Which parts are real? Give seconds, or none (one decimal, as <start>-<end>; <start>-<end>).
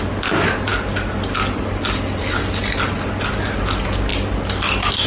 0.0-5.1